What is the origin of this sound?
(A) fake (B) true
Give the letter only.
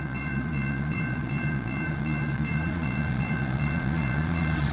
A